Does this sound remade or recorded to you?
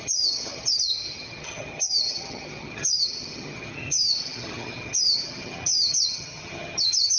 remade